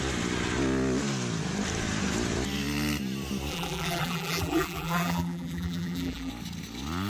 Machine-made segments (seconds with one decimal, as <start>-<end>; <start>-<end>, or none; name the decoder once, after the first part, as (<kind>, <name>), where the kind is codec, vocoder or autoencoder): 3.5-6.3 (vocoder, BigVGAN v2)